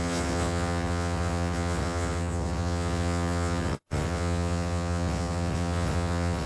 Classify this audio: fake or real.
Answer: fake